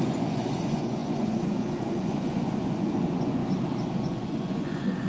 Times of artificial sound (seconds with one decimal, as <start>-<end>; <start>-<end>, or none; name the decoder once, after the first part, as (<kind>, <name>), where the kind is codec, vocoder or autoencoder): 0.0-3.4 (vocoder, Vocos); 4.0-5.1